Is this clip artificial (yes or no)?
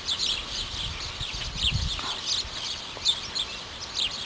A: no